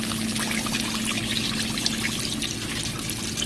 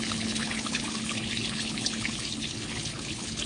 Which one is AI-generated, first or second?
second